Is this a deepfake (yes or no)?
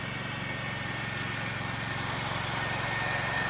no